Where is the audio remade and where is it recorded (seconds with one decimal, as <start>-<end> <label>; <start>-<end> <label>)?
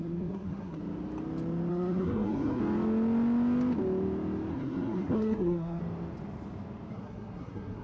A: 0.0-0.8 remade; 0.8-1.7 recorded; 1.7-2.6 remade; 2.6-4.5 recorded; 4.5-5.8 remade; 5.8-6.9 recorded; 6.9-7.8 remade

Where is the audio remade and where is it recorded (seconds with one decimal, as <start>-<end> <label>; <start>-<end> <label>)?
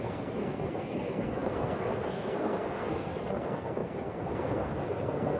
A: 0.0-5.4 remade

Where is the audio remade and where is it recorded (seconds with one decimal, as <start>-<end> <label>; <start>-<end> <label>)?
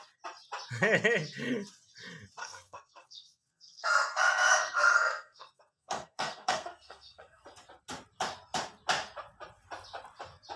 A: 0.0-2.4 recorded; 2.4-7.4 remade; 7.4-10.6 recorded